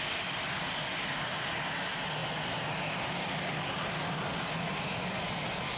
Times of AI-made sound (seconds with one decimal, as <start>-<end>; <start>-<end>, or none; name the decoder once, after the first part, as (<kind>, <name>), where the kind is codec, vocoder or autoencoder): none